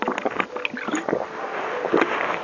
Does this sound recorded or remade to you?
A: recorded